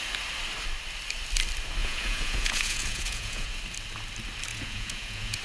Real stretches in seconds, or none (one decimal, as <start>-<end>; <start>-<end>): 0.0-1.8; 3.6-4.5